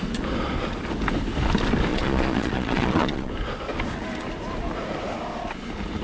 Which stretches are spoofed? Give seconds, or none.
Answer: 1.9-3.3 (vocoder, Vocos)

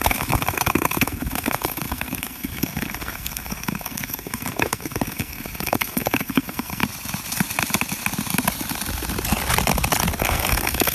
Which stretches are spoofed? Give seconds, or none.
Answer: 0.0-6.8 (codec, SNAC); 10.2-10.9

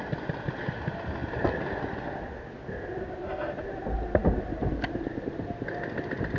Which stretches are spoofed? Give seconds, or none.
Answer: none

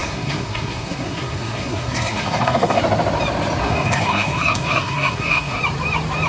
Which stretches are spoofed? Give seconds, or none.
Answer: 0.0-2.8 (codec, SNAC); 3.6-5.6

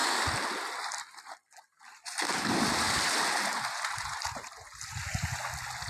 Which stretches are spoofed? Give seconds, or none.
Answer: none

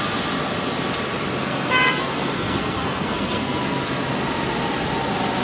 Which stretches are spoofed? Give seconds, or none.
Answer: 1.4-3.6 (codec, SNAC)

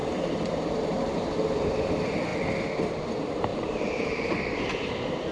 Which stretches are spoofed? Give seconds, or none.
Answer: 0.0-1.2 (vocoder, BigVGAN v2); 3.5-4.3